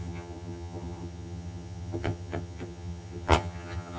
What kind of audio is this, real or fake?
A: fake